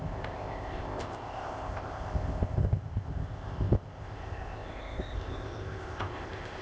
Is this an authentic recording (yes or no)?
no